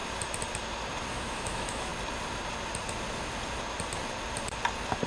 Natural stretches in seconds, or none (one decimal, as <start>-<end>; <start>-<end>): 0.0-1.1; 1.9-5.1